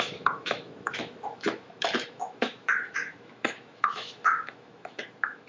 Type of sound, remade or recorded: remade